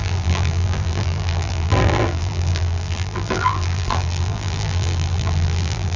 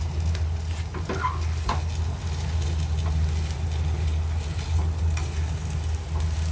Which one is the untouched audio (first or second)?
second